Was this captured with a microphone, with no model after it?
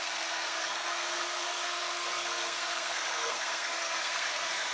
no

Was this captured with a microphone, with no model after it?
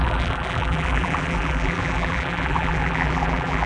no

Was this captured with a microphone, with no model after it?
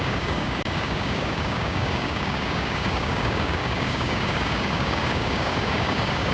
no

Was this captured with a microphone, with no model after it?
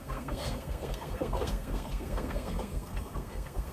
no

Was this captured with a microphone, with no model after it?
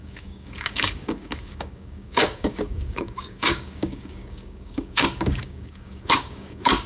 no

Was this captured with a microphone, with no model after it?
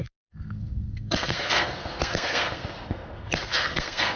no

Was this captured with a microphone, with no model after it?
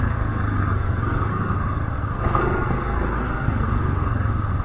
no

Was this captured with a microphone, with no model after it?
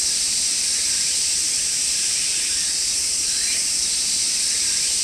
no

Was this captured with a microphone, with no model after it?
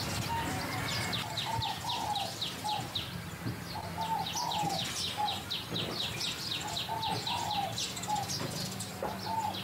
yes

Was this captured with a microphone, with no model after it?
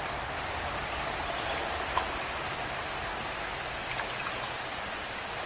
yes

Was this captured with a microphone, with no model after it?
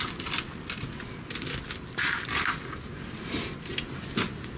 yes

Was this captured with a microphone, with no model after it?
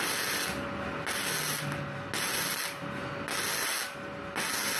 yes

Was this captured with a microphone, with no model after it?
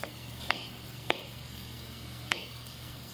no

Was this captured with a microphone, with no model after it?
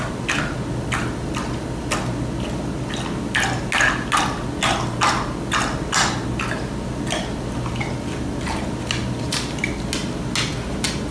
yes